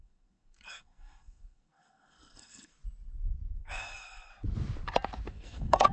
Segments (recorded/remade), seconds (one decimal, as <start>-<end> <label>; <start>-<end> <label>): 0.0-2.8 remade; 2.8-3.5 recorded; 3.5-4.3 remade; 4.3-5.3 recorded; 5.3-5.9 remade